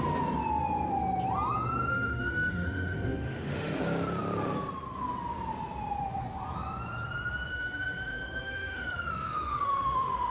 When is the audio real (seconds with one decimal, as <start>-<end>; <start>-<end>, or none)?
0.0-1.9; 3.8-7.5